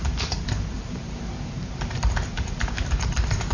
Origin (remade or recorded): remade